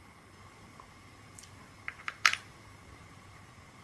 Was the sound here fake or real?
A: fake